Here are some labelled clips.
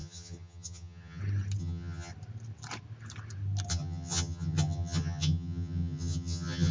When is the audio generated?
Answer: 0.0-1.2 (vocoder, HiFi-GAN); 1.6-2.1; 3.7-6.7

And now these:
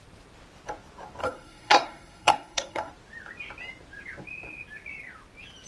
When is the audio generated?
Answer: 1.2-2.9 (codec, SNAC)

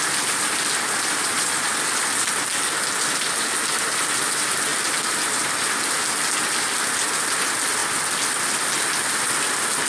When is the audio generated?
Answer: 1.2-1.7 (vocoder, Vocos)